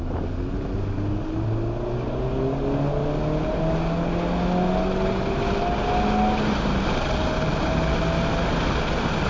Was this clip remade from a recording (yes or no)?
no